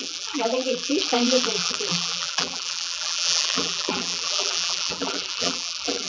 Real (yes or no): no